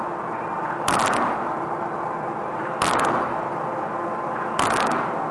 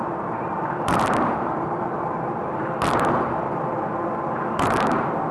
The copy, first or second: second